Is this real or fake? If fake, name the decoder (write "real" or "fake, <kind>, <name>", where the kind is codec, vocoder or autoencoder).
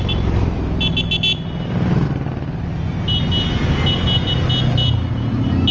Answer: real